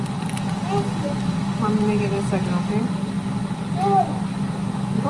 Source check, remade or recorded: recorded